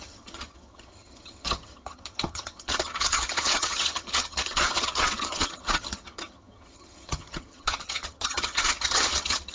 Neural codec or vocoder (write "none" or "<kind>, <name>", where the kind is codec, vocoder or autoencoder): vocoder, HiFi-GAN